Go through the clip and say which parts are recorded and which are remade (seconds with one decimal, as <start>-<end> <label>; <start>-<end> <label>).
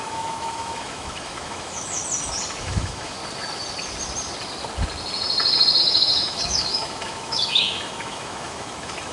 0.0-2.0 remade; 2.0-2.6 recorded; 2.6-3.2 remade; 3.2-5.8 recorded; 5.8-9.1 remade